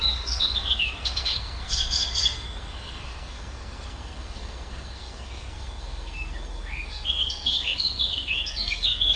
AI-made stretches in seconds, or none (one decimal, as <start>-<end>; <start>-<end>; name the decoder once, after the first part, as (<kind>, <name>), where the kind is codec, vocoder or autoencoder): 0.0-9.2 (codec, SNAC)